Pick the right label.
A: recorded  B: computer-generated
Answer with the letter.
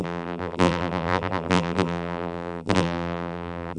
B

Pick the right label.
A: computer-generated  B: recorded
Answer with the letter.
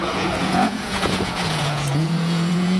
A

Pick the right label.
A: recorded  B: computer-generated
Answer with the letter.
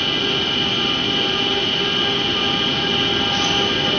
A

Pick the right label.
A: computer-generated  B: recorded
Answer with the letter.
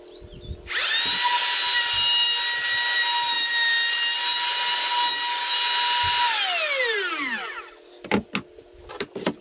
B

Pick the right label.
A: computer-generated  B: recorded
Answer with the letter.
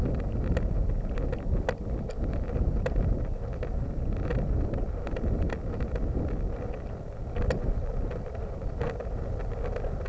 B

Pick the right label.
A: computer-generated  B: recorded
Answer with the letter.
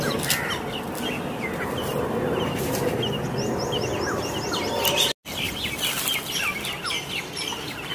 B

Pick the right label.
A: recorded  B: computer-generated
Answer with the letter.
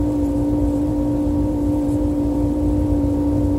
B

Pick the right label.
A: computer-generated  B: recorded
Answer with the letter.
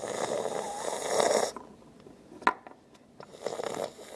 B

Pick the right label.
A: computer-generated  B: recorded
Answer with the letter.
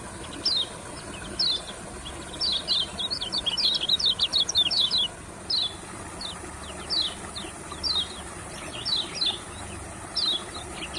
B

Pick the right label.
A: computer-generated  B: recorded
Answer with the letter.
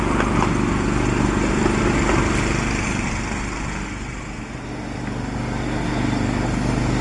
B